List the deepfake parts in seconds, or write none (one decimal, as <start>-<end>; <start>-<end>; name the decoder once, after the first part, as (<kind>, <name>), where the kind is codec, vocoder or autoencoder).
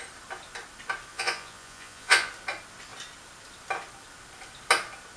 1.1-2.3 (vocoder, Vocos)